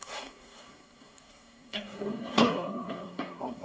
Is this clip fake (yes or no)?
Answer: yes